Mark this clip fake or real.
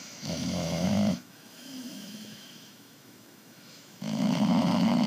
fake